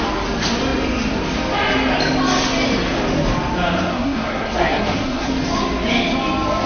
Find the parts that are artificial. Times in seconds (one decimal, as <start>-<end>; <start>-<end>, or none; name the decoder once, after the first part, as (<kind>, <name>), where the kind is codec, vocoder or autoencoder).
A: 3.9-5.3 (codec, SNAC)